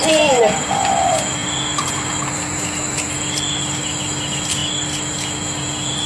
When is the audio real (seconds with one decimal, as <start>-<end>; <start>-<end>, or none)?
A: 0.0-6.1